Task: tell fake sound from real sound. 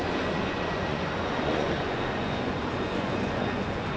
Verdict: fake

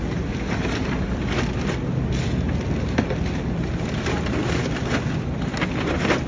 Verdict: real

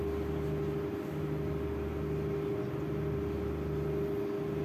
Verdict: real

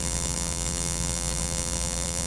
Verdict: fake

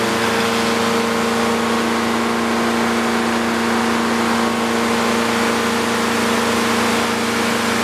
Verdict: real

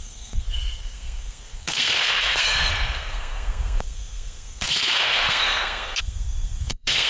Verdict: fake